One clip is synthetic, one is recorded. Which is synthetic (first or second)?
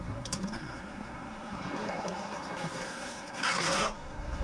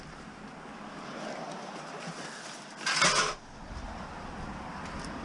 first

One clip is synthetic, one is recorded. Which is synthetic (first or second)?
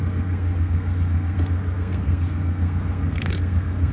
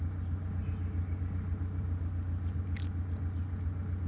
first